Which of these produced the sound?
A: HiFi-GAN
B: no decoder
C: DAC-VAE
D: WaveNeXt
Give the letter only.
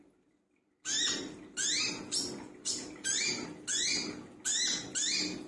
B